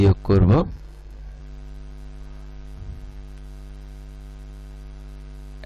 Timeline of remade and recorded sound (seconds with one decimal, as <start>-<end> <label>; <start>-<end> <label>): 0.0-0.6 recorded; 0.6-1.4 remade; 1.4-5.7 recorded